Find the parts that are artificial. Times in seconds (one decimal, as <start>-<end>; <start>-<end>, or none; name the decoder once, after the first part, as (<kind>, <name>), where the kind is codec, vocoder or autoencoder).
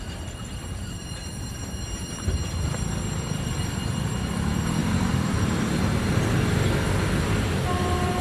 0.0-1.2 (vocoder, BigVGAN v2); 3.4-8.2